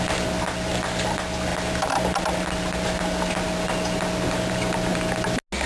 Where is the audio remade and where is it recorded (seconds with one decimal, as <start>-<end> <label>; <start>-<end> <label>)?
0.0-5.7 recorded